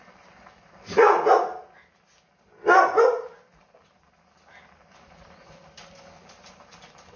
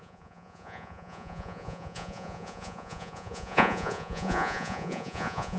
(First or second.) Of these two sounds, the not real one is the second